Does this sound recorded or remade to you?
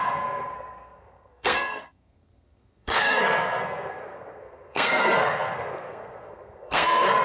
remade